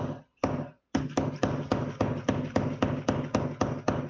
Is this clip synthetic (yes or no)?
no